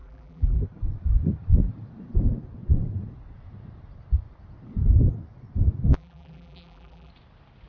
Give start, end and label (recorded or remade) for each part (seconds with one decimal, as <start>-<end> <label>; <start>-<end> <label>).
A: 0.0-0.6 remade; 0.6-5.9 recorded; 5.9-7.1 remade; 7.1-7.7 recorded